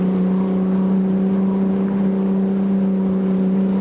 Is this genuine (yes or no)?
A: yes